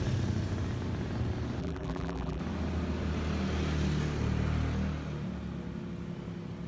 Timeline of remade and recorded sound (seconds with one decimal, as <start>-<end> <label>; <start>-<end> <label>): 0.0-1.6 recorded; 1.6-2.4 remade; 2.4-6.7 recorded